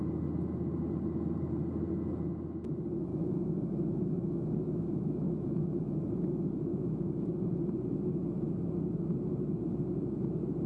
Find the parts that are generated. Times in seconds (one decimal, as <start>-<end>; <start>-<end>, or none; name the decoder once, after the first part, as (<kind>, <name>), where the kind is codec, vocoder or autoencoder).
3.1-6.0 (autoencoder, DAC-VAE); 6.7-7.5